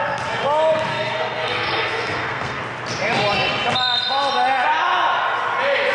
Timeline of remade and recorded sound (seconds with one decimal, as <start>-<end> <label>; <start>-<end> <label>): 0.0-0.9 recorded; 0.9-2.6 remade; 2.6-5.9 recorded